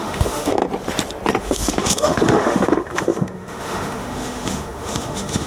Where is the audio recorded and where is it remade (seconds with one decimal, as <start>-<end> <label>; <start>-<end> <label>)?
0.0-0.6 remade; 0.6-1.4 recorded; 1.4-5.5 remade